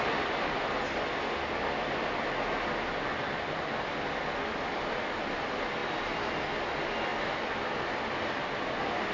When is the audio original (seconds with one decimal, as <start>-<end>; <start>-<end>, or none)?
0.0-9.1